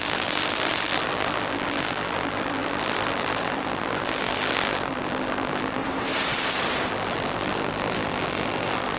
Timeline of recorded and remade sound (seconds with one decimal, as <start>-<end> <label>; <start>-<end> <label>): 0.0-5.8 remade; 5.8-6.9 recorded; 6.9-9.0 remade